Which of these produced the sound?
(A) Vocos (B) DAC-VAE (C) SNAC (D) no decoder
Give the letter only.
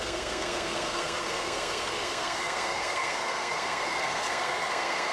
C